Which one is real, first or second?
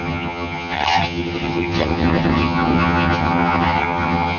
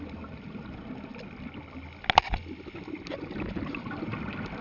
second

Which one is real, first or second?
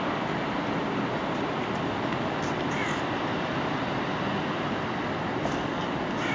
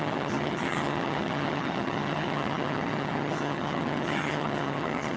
first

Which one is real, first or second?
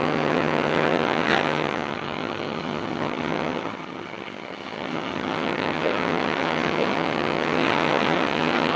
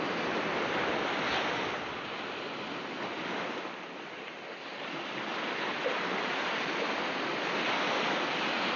second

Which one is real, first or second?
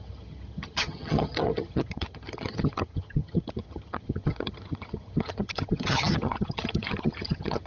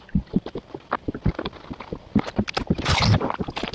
second